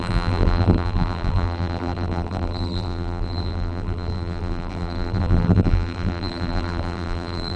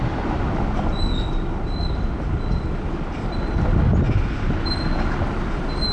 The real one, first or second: second